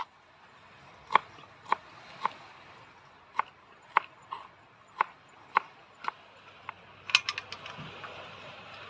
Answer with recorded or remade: recorded